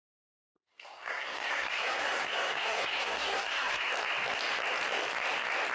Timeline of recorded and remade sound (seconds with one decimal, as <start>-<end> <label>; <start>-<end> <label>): 0.0-0.5 recorded; 0.5-3.9 remade; 3.9-5.7 recorded